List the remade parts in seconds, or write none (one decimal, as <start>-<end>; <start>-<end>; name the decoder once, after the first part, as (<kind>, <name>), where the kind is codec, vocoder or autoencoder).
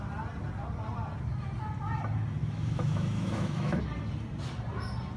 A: 2.4-3.8 (autoencoder, DAC-VAE)